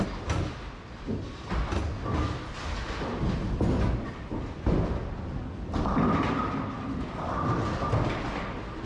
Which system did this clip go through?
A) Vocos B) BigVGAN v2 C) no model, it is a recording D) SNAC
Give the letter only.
C